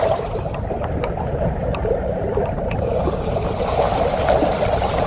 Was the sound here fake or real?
fake